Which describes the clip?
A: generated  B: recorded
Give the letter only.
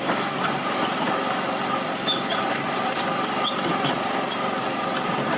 B